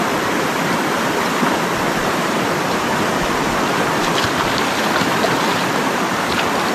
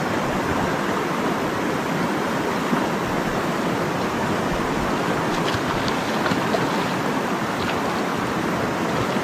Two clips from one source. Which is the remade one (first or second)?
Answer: first